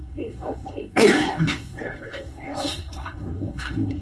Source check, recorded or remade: remade